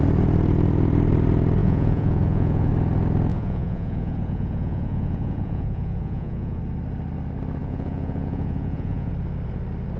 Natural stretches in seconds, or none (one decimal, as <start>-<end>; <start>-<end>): 0.0-1.6; 2.7-3.3; 6.6-7.6; 9.1-10.0